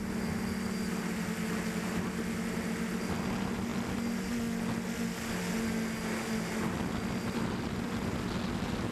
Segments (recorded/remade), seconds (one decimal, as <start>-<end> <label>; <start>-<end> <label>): 0.0-8.9 recorded